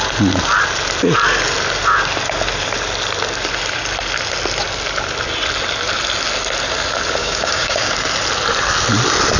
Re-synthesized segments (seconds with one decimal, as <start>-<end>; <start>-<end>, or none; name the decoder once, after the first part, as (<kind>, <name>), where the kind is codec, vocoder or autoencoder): 7.2-7.9 (codec, DAC)